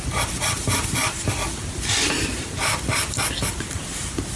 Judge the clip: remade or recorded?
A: remade